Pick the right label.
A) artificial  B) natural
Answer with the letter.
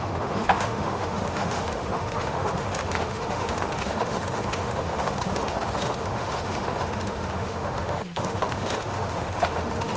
A